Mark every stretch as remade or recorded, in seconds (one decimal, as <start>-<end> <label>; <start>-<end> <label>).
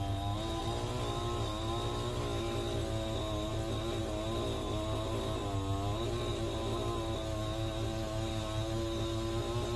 0.0-9.8 recorded